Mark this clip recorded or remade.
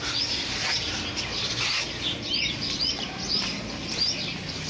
recorded